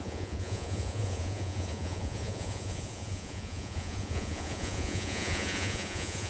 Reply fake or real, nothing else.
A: fake